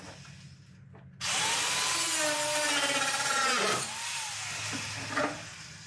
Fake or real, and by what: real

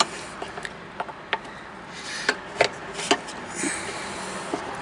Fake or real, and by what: real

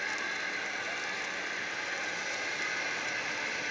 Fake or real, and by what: real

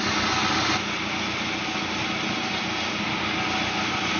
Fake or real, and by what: real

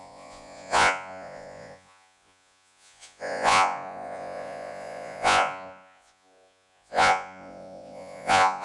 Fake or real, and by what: fake, vocoder, Vocos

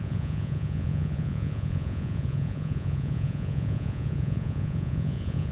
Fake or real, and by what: fake, vocoder, Vocos